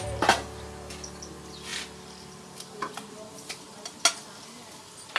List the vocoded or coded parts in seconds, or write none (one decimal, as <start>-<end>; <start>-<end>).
none